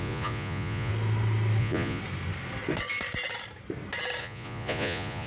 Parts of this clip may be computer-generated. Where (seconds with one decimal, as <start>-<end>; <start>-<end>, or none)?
0.0-0.9; 1.6-2.0; 4.2-5.3